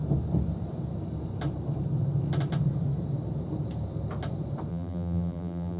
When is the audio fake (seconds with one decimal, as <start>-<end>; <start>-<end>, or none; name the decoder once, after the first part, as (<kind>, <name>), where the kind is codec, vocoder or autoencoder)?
4.7-5.8 (vocoder, BigVGAN v2)